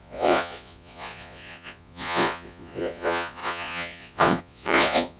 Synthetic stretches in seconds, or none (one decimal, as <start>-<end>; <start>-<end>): 0.0-5.2